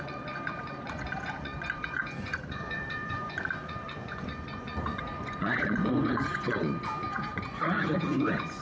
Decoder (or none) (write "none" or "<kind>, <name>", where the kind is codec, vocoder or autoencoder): vocoder, Vocos